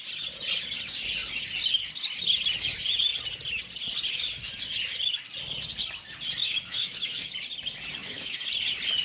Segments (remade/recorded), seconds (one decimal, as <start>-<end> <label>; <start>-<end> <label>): 0.0-6.4 recorded; 6.4-7.3 remade; 7.3-8.0 recorded; 8.0-8.5 remade; 8.5-9.0 recorded